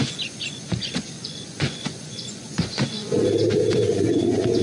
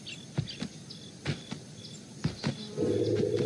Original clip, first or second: second